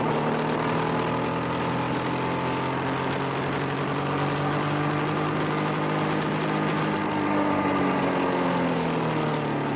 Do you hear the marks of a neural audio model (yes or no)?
no